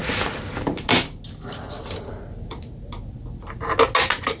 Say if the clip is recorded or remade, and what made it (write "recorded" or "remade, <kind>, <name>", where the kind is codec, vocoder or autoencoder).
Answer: recorded